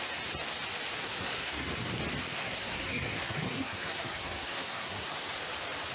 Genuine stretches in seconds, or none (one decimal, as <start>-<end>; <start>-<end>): 0.0-1.0; 1.8-2.4; 5.1-5.9